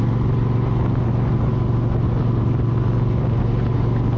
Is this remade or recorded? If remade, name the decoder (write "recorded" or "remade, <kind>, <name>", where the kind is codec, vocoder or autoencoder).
recorded